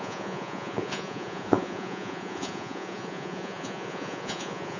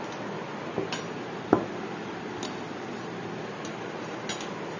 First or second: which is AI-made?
first